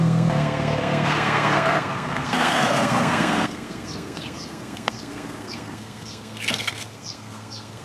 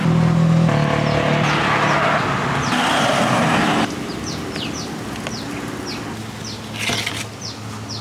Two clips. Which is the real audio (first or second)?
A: second